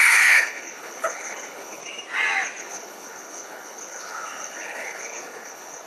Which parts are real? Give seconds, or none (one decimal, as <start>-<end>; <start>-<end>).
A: 1.8-2.6